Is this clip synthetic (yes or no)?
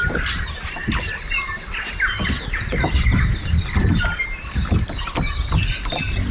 no